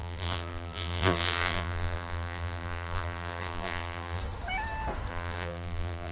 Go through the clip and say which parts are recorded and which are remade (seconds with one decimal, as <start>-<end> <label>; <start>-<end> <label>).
0.0-4.2 remade; 4.2-5.1 recorded; 5.1-6.1 remade